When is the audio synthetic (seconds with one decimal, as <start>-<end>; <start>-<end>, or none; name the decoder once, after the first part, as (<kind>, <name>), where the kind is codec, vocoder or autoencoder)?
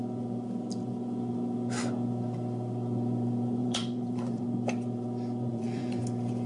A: 3.6-4.4 (vocoder, Vocos); 5.5-6.0